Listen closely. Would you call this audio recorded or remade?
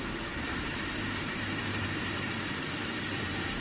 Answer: remade